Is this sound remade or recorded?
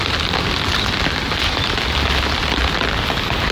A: recorded